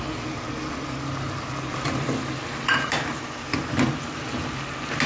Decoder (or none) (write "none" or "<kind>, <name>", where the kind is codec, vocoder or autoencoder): none